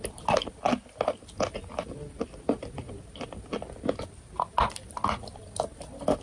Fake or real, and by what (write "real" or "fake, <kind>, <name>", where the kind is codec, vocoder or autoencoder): real